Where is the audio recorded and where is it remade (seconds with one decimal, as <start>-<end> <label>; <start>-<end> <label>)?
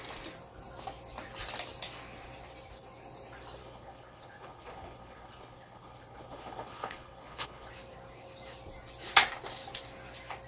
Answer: 0.0-3.6 recorded; 3.6-7.7 remade; 7.7-10.5 recorded